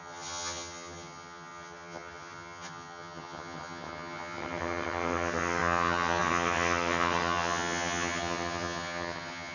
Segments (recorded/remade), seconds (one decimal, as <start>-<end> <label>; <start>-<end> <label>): 0.0-9.5 remade